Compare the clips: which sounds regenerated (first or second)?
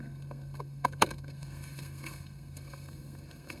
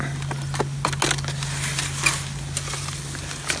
first